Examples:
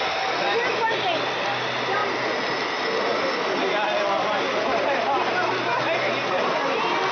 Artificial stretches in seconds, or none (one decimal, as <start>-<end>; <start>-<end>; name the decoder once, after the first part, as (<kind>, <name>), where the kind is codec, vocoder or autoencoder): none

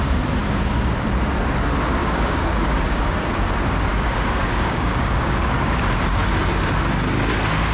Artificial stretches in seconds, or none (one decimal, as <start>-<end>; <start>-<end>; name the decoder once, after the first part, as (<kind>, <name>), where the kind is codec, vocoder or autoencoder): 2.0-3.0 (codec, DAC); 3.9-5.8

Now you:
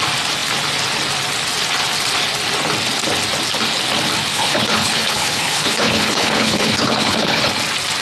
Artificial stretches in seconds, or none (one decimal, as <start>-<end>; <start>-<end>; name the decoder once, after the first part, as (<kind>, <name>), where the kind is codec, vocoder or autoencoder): 4.3-7.5 (codec, HILCodec)

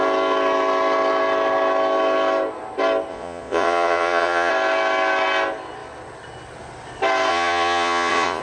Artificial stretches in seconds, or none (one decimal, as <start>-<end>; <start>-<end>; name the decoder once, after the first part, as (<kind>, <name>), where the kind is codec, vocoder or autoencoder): 3.1-4.5 (vocoder, Vocos); 7.3-8.4

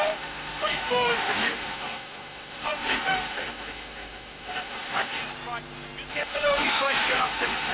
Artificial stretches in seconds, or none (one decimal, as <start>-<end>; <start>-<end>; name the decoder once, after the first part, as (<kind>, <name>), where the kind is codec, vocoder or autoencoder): 0.0-5.2 (autoencoder, DAC-VAE); 6.1-7.7

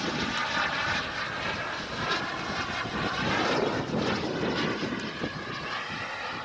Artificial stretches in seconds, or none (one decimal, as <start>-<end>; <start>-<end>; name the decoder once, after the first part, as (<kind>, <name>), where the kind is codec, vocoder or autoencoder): 0.4-1.0 (vocoder, BigVGAN v2)